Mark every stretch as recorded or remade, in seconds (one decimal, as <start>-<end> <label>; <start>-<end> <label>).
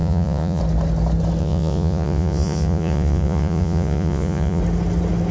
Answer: 0.0-0.6 remade; 0.6-1.4 recorded; 1.4-4.6 remade; 4.6-5.3 recorded